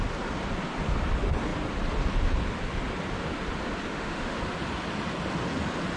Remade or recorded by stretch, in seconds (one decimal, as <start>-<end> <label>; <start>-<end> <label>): 0.0-3.9 recorded; 3.9-4.4 remade; 4.4-6.0 recorded